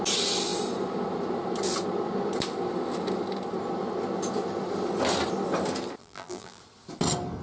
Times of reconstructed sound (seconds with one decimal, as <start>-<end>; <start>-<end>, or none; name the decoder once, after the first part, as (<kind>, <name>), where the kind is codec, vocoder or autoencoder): 6.0-6.6 (vocoder, BigVGAN v2)